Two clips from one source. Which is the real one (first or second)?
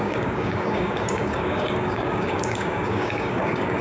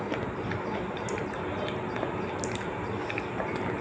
second